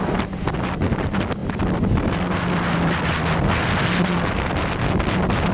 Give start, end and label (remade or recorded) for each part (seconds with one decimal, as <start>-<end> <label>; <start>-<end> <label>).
0.0-5.5 recorded